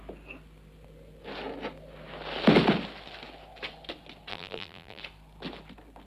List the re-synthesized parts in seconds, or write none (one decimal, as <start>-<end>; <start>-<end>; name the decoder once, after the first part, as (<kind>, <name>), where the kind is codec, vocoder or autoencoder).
4.3-5.0 (vocoder, BigVGAN v2)